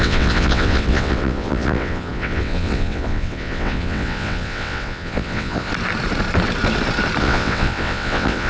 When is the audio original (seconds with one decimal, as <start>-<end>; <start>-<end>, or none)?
5.7-7.2